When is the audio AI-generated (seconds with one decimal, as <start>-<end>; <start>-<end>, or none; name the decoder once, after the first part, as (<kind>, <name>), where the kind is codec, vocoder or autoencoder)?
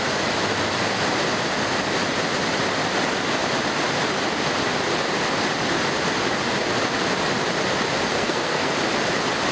8.1-8.7 (codec, SNAC)